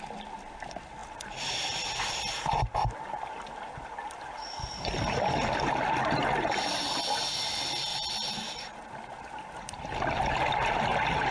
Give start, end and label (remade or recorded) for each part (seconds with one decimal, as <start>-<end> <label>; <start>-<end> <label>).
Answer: 0.0-11.3 recorded